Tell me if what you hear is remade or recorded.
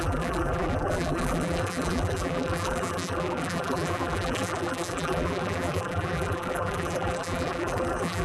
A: remade